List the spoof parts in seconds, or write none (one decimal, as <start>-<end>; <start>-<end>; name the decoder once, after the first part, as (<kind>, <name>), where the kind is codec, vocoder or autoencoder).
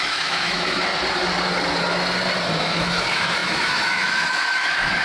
0.0-0.9 (autoencoder, DAC-VAE); 2.6-5.0